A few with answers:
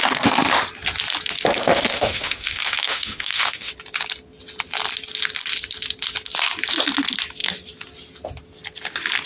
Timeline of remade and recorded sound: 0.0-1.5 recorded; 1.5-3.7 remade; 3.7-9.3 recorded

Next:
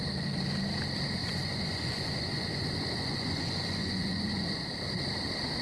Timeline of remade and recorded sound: 0.0-1.2 recorded; 1.2-4.6 remade; 4.6-5.6 recorded